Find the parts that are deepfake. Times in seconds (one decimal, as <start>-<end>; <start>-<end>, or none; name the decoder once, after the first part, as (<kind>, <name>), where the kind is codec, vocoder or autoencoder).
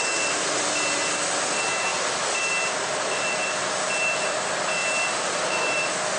1.9-2.5 (vocoder, BigVGAN v2); 4.8-6.2